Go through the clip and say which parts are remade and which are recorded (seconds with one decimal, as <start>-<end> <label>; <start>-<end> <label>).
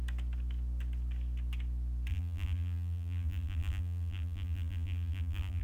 0.0-2.1 recorded; 2.1-5.6 remade